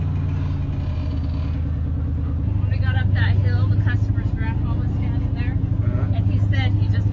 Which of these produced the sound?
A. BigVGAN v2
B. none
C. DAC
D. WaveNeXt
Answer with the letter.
B